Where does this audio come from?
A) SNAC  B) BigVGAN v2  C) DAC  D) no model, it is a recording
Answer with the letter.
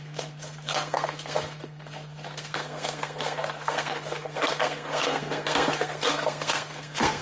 A